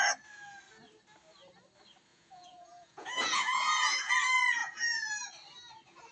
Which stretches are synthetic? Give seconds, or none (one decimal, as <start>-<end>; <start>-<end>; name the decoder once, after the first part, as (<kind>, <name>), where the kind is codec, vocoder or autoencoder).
2.1-4.1 (vocoder, Vocos); 4.6-5.1